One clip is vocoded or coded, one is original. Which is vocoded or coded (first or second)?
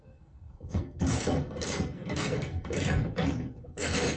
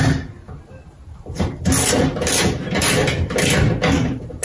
first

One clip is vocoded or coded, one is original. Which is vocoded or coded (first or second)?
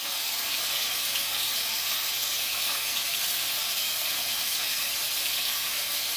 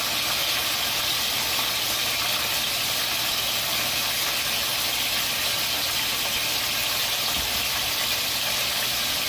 first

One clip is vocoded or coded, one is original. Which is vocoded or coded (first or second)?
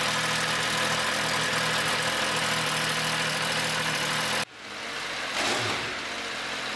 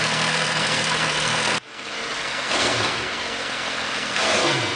second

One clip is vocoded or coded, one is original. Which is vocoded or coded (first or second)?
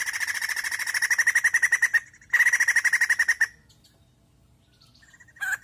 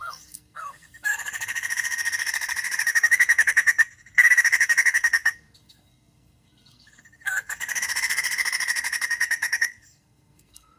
second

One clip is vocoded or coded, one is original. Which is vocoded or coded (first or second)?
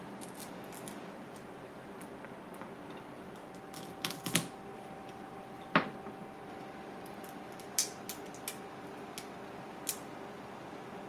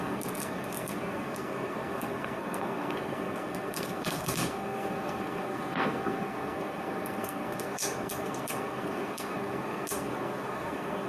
second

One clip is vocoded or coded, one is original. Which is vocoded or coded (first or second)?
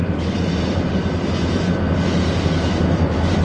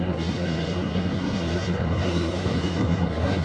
second